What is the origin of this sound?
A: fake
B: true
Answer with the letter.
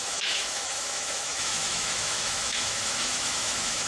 A